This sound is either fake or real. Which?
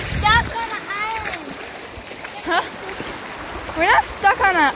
real